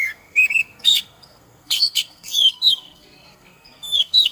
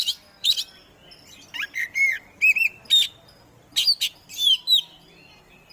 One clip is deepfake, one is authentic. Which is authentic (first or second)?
second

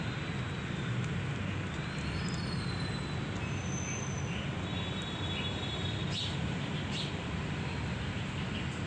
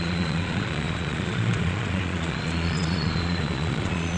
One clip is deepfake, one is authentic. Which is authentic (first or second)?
first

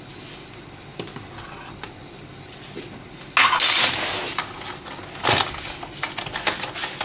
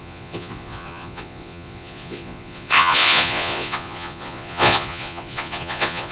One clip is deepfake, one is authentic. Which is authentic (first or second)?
first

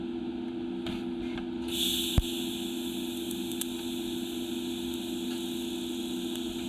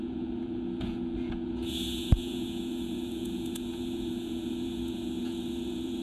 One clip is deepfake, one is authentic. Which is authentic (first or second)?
first